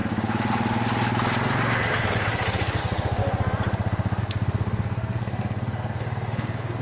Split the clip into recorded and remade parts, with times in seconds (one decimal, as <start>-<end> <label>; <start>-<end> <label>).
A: 0.0-2.8 recorded; 2.8-3.2 remade; 3.2-4.2 recorded; 4.2-6.8 remade